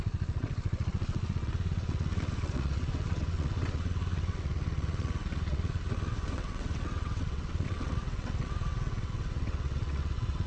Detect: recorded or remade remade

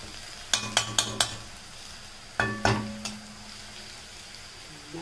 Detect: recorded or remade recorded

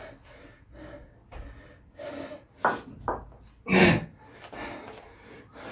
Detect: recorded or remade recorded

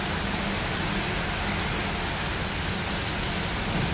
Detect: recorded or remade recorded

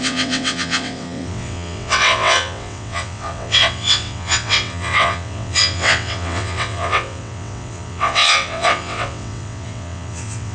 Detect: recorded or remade remade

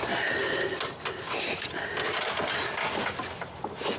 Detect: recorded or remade recorded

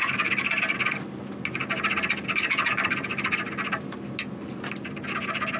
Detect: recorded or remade recorded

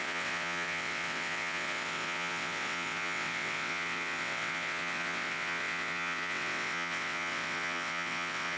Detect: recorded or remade remade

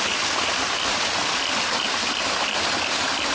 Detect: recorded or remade recorded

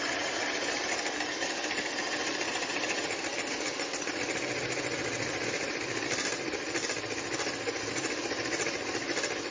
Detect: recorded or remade recorded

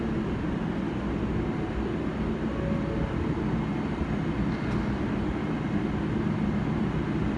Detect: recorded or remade recorded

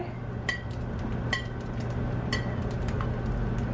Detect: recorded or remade recorded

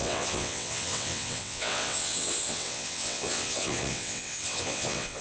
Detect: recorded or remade remade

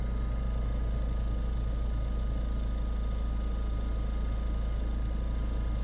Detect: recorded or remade recorded